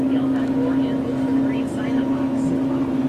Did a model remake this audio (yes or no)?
no